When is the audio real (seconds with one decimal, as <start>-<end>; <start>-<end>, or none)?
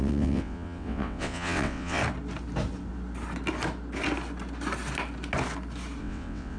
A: 2.0-6.0